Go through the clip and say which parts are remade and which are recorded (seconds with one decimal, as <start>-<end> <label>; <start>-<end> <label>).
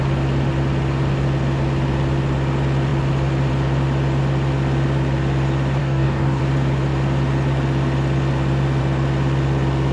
0.0-5.8 recorded; 5.8-6.4 remade; 6.4-9.9 recorded